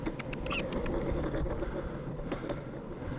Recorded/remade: recorded